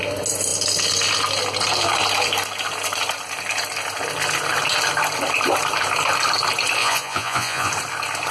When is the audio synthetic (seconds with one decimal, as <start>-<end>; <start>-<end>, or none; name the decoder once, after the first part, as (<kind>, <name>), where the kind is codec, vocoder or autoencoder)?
6.8-7.7 (vocoder, Vocos)